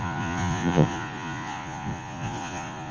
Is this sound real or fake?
fake